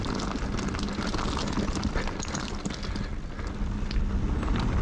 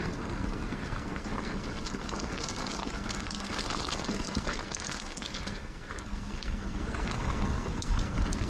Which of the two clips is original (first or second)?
first